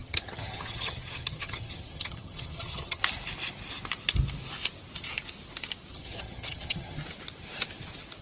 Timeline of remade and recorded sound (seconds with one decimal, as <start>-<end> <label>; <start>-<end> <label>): 0.0-3.0 remade; 3.0-5.9 recorded; 5.9-7.0 remade; 7.0-8.2 recorded